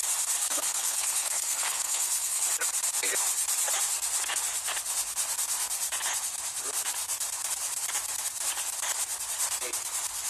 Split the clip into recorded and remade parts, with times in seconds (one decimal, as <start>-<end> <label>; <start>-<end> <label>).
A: 0.0-0.4 recorded; 0.4-2.4 remade; 2.4-10.3 recorded